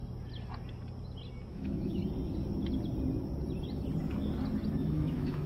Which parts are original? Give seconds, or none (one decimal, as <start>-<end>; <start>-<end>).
0.0-1.5; 2.0-4.8